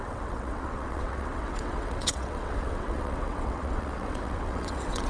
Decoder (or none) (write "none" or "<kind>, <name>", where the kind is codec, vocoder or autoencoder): vocoder, WaveNeXt